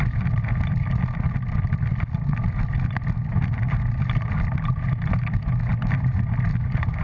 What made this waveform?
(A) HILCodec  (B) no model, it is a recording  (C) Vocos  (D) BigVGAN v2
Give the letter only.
B